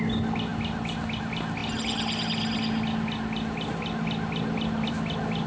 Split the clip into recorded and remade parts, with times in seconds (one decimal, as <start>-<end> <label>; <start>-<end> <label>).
0.0-5.5 recorded